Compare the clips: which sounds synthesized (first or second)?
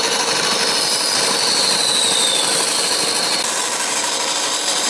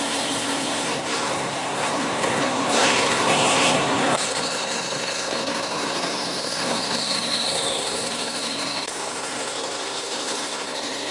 second